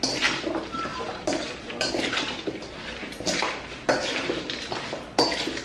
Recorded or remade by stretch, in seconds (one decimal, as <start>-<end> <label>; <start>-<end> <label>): 0.0-0.9 recorded; 0.9-1.9 remade; 1.9-3.0 recorded; 3.0-3.5 remade; 3.5-4.0 recorded; 4.0-4.7 remade; 4.7-5.6 recorded